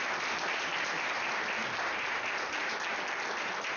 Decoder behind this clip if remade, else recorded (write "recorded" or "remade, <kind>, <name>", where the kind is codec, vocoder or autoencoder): recorded